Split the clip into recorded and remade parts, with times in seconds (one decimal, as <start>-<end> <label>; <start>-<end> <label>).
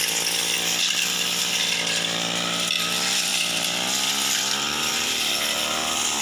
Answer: 0.0-6.2 recorded